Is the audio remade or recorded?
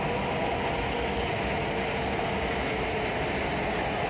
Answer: recorded